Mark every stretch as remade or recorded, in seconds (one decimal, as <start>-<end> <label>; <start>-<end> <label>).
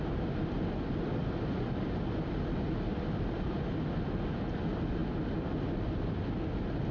0.0-6.9 recorded